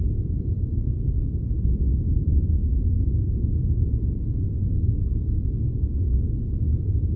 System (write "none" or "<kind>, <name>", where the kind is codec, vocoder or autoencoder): none